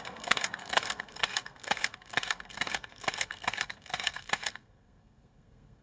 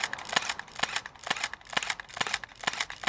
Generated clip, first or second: first